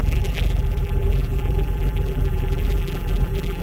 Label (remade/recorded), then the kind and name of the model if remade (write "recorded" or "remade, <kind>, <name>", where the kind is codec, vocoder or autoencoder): remade, vocoder, BigVGAN v2